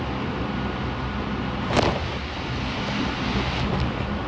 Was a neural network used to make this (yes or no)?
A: no